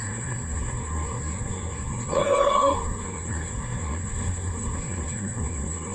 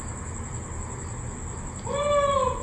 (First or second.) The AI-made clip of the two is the first